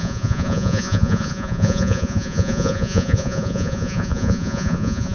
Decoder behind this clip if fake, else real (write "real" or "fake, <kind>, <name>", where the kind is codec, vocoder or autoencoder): fake, vocoder, Vocos